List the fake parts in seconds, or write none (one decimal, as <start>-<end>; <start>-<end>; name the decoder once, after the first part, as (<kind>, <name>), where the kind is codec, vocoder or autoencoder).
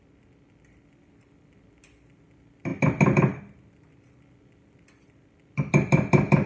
none